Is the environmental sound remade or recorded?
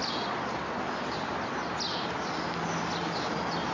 recorded